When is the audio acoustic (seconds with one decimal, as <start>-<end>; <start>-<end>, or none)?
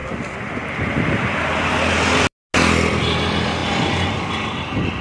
0.0-5.0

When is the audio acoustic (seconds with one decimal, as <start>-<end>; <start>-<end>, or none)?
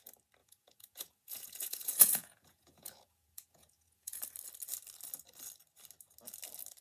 0.0-0.4; 4.2-6.8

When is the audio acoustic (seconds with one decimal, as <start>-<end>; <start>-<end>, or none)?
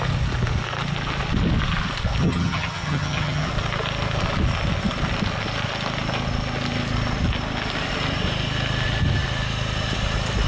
0.0-2.2; 3.5-10.5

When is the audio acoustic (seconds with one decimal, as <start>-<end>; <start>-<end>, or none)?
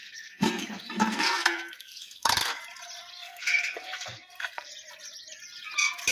2.6-3.1; 4.7-6.1